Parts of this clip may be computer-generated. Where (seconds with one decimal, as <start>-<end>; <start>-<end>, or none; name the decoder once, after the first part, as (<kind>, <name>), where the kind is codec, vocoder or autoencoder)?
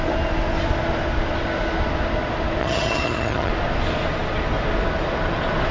2.6-3.5 (vocoder, HiFi-GAN)